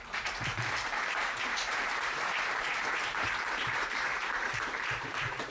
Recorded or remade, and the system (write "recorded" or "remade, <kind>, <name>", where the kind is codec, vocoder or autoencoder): remade, vocoder, BigVGAN v2